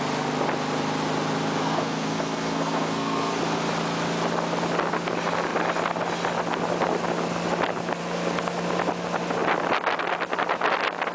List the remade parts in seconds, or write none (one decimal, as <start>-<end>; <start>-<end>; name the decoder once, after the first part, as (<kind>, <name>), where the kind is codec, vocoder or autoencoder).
1.6-3.4 (codec, SNAC)

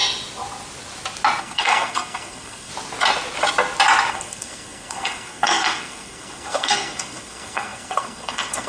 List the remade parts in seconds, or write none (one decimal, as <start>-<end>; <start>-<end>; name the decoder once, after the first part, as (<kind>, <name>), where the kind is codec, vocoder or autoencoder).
1.4-2.7 (codec, SNAC); 4.1-8.7

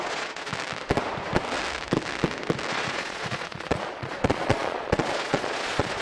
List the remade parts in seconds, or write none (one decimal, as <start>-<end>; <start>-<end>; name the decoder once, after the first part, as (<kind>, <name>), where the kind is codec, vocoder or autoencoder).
0.0-0.5 (vocoder, Vocos); 2.7-6.0

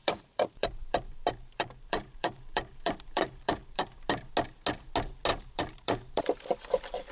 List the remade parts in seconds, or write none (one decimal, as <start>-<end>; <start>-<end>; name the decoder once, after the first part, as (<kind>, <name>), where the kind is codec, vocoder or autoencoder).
0.0-4.3 (vocoder, BigVGAN v2); 5.3-6.2

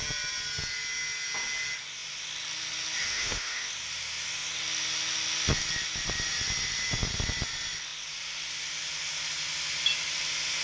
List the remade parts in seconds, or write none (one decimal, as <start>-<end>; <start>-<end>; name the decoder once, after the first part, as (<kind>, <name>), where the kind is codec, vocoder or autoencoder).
3.1-3.7 (autoencoder, DAC-VAE)

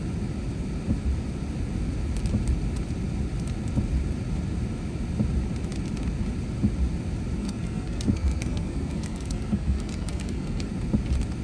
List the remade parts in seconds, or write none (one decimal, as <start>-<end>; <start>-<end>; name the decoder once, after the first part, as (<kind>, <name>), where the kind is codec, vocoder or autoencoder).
7.4-10.7 (codec, SNAC)